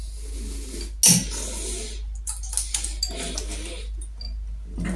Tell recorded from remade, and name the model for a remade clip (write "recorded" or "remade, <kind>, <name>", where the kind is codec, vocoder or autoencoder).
recorded